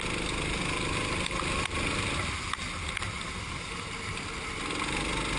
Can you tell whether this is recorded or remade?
recorded